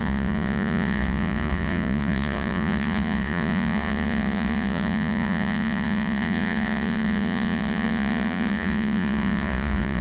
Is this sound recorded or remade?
remade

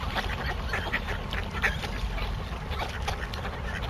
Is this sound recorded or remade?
recorded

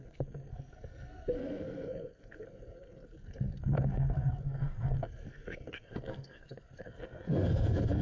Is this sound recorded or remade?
remade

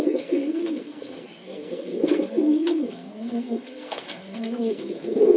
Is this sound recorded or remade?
remade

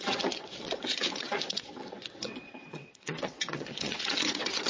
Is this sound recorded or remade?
remade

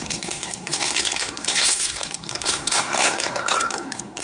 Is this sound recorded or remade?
remade